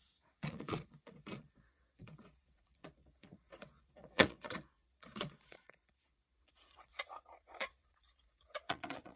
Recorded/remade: remade